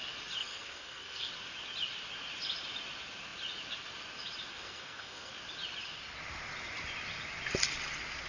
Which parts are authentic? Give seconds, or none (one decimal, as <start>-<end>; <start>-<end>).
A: 0.0-0.4; 1.3-4.5; 5.3-8.3